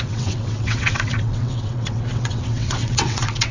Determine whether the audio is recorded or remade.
remade